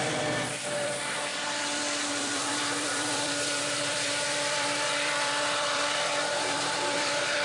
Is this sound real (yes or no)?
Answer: no